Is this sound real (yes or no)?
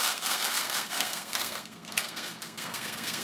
no